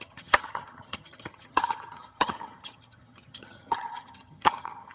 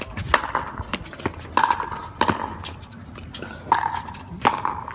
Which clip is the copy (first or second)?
first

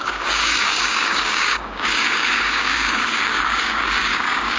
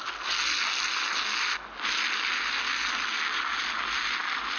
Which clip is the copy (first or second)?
first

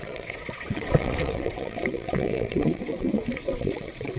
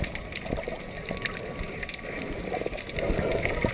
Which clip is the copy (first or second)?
first